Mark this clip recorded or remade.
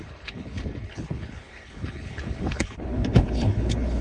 remade